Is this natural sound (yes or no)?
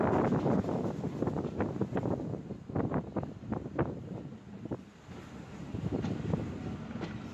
yes